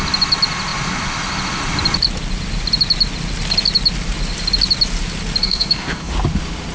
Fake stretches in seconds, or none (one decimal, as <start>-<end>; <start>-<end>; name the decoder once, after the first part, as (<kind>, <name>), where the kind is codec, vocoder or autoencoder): 5.4-6.1 (codec, DAC)